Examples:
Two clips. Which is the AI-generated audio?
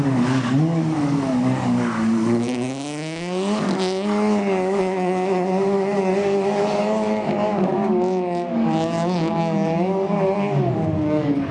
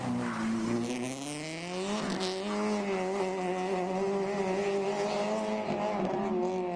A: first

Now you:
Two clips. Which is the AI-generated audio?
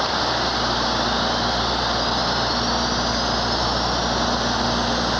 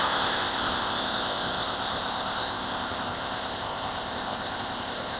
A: second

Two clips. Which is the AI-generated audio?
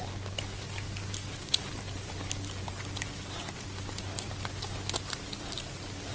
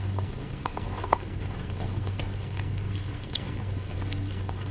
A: second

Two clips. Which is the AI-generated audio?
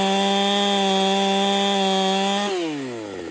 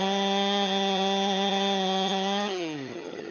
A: second